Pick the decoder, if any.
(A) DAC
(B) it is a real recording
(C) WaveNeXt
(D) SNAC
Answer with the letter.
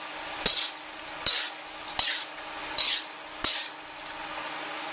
B